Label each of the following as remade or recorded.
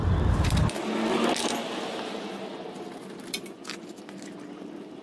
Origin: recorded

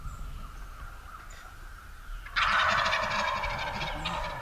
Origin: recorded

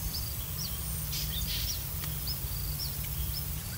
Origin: remade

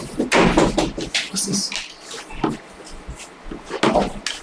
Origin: recorded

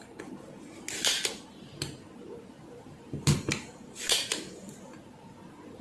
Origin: recorded